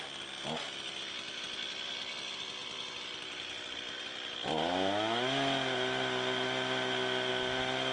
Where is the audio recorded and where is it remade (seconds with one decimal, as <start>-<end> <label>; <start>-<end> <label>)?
0.0-7.9 recorded